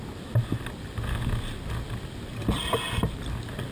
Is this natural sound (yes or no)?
yes